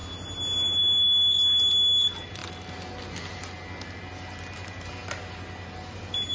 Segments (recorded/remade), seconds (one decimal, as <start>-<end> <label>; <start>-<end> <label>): 0.0-6.3 recorded

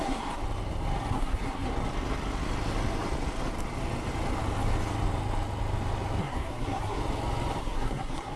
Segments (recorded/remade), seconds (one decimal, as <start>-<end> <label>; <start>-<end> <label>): 0.0-0.4 remade; 0.4-1.1 recorded; 1.1-1.7 remade; 1.7-6.2 recorded; 6.2-7.0 remade; 7.0-7.6 recorded; 7.6-8.4 remade

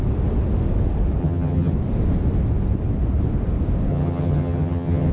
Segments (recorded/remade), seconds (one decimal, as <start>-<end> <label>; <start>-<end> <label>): 0.0-1.2 recorded; 1.2-1.7 remade; 1.7-3.9 recorded; 3.9-5.1 remade

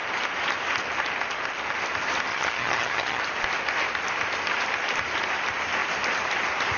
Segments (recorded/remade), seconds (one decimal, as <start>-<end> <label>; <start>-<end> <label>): 0.0-2.3 recorded; 2.3-3.2 remade; 3.2-6.8 recorded

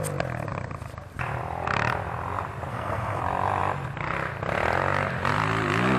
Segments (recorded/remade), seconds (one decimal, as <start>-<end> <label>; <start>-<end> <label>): 0.0-2.7 recorded; 2.7-3.2 remade; 3.2-6.0 recorded

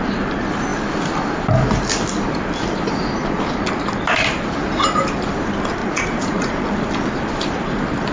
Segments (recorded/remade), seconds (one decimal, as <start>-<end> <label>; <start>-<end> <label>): 0.0-5.8 recorded; 5.8-6.6 remade; 6.6-8.1 recorded

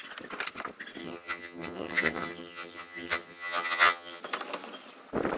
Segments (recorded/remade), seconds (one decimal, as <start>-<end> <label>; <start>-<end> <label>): 0.0-1.0 recorded; 1.0-4.2 remade; 4.2-5.4 recorded